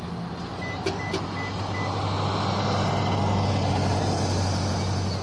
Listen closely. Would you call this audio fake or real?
real